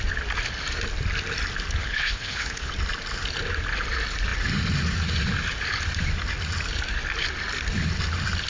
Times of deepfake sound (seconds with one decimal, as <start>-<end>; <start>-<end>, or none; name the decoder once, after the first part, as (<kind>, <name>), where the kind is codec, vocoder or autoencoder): 1.8-2.7 (codec, HILCodec)